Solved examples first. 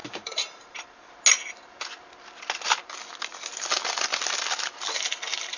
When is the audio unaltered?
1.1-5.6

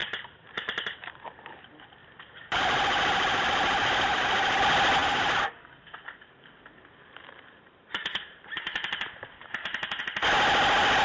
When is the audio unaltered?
1.4-2.0; 4.6-5.0; 10.0-11.0

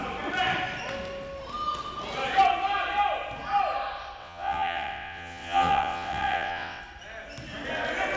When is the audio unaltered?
0.0-4.2; 6.8-8.2

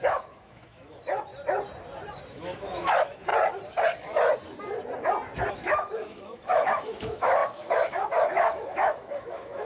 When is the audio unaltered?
1.3-2.3; 3.3-5.5

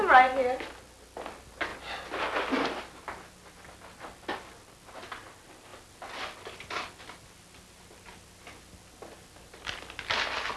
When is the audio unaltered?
0.0-10.6